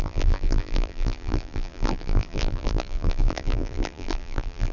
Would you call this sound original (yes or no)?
no